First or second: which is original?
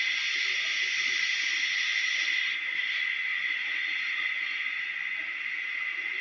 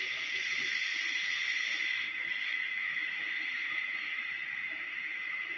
first